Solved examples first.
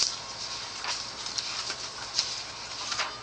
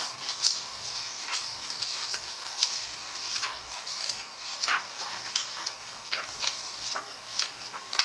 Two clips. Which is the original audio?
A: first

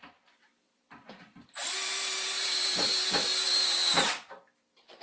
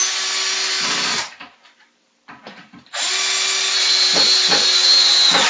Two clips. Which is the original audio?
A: second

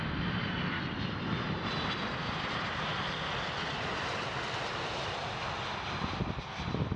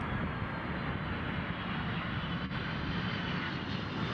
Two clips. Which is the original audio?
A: first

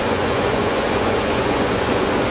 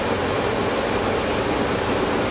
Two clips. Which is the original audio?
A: second